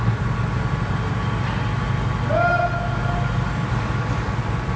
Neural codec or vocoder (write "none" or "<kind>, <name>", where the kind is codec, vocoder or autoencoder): none